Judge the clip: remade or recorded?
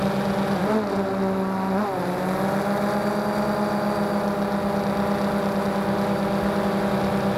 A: recorded